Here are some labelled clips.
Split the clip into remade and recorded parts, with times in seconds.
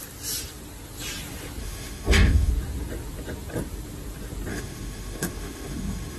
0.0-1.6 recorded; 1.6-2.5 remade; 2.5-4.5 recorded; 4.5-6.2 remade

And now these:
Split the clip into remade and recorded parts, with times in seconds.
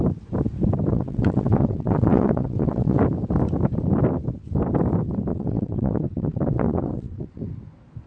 0.0-0.9 recorded; 0.9-3.0 remade; 3.0-5.3 recorded; 5.3-7.4 remade; 7.4-8.1 recorded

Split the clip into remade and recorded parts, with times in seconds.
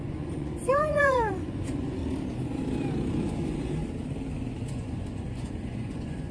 0.0-2.0 remade; 2.0-3.1 recorded; 3.1-3.8 remade; 3.8-4.7 recorded; 4.7-6.3 remade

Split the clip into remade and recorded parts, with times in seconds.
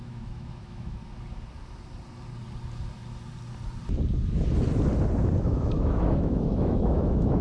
0.0-1.0 remade; 1.0-5.4 recorded; 5.4-7.4 remade